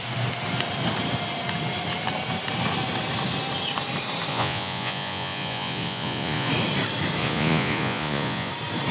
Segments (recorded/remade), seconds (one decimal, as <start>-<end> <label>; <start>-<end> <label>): 0.0-4.3 recorded; 4.3-6.5 remade; 6.5-7.2 recorded; 7.2-8.5 remade; 8.5-8.9 recorded